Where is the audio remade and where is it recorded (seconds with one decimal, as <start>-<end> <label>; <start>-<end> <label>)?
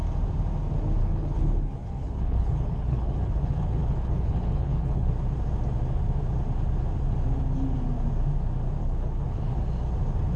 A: 0.0-1.0 recorded; 1.0-5.1 remade; 5.1-8.8 recorded; 8.8-9.6 remade; 9.6-10.4 recorded